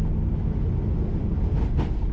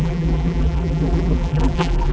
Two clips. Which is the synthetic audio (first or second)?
second